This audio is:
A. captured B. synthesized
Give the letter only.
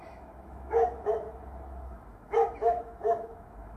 B